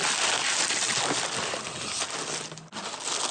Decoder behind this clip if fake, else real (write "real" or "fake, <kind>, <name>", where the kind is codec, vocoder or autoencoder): real